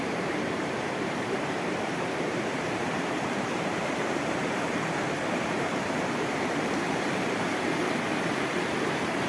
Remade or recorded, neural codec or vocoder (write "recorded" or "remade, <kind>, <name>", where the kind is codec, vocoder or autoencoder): remade, vocoder, BigVGAN v2